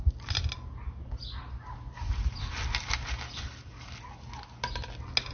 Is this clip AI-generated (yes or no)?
no